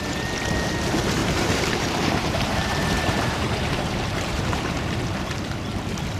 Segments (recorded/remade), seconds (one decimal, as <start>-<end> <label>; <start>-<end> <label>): 0.0-1.2 recorded; 1.2-4.9 remade; 4.9-6.2 recorded